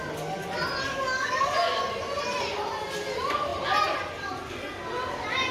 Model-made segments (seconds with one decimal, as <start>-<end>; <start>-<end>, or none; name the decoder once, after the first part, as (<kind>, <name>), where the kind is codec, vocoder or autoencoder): 0.9-1.8 (codec, DAC)